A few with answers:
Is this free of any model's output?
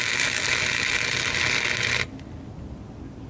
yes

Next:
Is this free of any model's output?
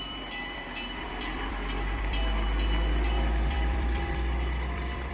no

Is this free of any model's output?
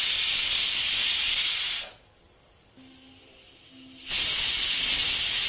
yes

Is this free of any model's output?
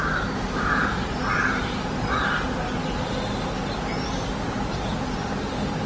yes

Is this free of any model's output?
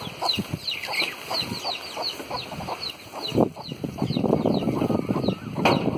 yes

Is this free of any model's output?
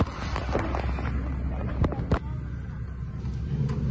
yes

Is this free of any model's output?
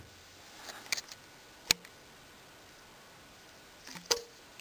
yes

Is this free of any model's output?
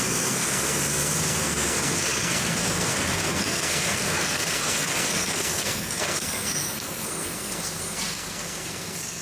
no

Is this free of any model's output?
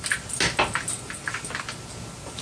yes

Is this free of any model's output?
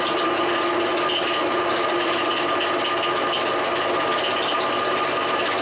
yes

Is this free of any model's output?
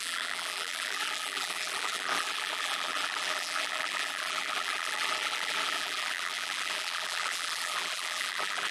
no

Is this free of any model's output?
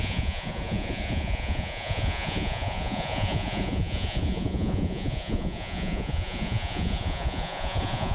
no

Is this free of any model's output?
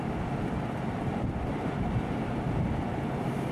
yes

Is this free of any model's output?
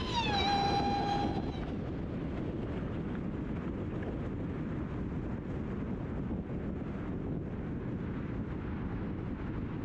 yes